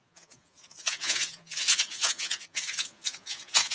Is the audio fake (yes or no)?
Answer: yes